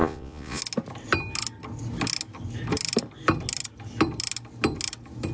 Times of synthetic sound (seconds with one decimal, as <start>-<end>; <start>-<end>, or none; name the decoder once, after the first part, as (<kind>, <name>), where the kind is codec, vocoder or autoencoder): 0.0-0.6 (vocoder, Vocos)